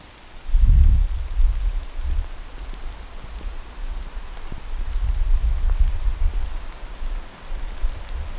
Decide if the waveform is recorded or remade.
recorded